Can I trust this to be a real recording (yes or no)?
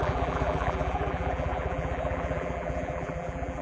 no